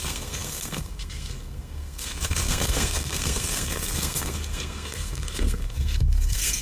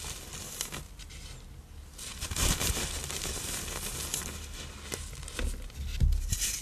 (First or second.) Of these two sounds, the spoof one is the first